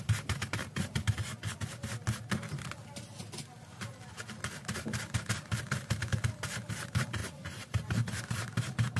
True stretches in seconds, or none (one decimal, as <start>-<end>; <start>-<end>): 1.3-5.6